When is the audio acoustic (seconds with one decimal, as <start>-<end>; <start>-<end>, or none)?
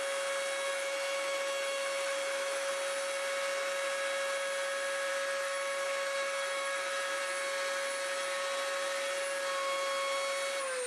0.0-0.7; 2.7-5.1; 7.2-10.9